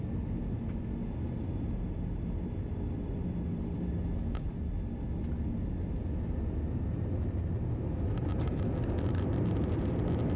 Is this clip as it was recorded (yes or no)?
yes